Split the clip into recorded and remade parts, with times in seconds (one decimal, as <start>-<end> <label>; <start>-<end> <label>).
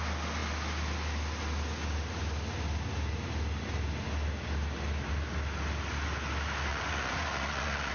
0.0-6.7 recorded; 6.7-7.9 remade